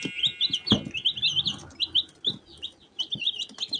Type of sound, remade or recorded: recorded